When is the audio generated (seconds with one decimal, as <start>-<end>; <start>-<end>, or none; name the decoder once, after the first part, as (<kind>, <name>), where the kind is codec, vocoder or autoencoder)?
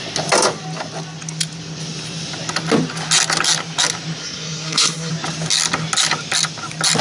4.2-5.1 (codec, SNAC)